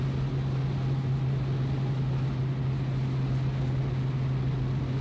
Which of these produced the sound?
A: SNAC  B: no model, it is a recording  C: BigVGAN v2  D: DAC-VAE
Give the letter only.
B